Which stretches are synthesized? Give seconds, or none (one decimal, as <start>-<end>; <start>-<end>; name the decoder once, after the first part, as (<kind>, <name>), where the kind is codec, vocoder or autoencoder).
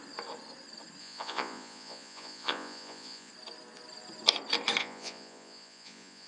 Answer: 1.0-3.3 (vocoder, Vocos); 4.8-6.3